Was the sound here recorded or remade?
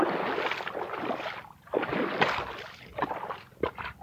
recorded